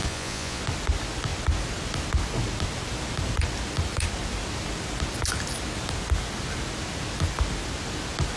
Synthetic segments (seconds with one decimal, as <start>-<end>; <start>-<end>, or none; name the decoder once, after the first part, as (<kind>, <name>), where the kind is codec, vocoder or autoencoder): 0.0-0.6 (vocoder, Vocos)